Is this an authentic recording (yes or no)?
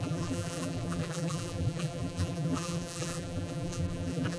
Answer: no